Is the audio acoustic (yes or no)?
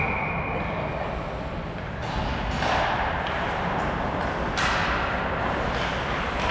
yes